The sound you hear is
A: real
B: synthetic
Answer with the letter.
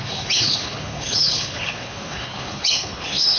B